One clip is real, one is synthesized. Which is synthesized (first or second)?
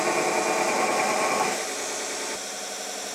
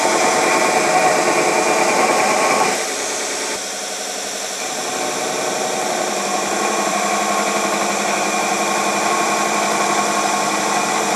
second